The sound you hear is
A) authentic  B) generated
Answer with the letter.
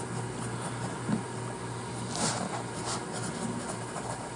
A